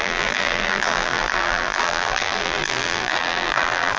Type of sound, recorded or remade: remade